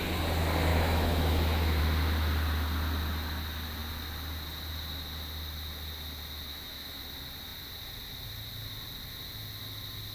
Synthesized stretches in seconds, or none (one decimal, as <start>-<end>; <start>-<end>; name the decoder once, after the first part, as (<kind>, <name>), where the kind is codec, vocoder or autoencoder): 0.7-1.8 (autoencoder, DAC-VAE); 6.5-7.0